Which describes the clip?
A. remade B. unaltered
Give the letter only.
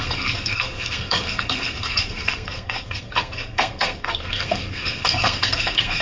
A